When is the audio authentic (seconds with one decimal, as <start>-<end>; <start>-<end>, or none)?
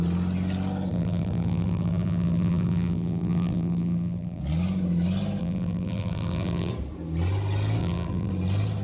0.0-0.9; 4.4-5.4; 6.7-7.8; 8.3-8.8